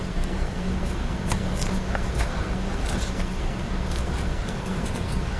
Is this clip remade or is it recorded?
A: remade